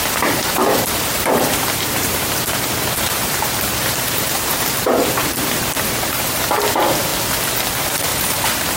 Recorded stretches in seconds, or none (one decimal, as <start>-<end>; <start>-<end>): 7.1-7.6; 8.1-8.8